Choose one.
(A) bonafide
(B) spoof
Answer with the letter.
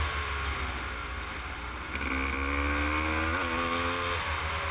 A